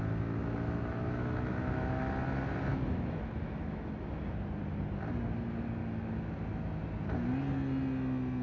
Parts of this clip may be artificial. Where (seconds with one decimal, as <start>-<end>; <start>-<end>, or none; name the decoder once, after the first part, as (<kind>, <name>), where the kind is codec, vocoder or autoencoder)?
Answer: 0.4-2.1 (autoencoder, DAC-VAE); 2.7-4.2; 5.8-6.3